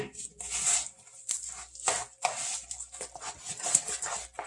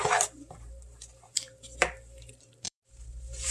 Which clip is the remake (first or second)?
second